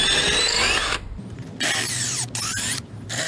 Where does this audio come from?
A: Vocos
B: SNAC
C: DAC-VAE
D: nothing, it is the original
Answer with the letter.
D